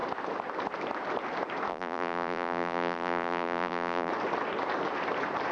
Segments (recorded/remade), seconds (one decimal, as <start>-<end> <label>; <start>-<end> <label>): 0.0-1.7 recorded; 1.7-4.1 remade; 4.1-5.5 recorded